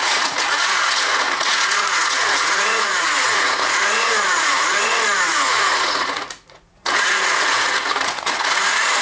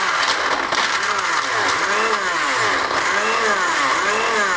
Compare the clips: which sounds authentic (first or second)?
second